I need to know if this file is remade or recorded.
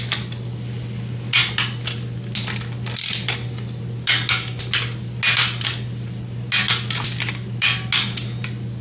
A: recorded